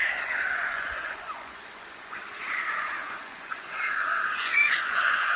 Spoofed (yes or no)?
yes